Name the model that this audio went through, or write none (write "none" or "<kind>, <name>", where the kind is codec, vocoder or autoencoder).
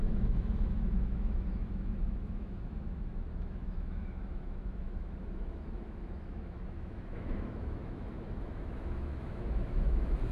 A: autoencoder, DAC-VAE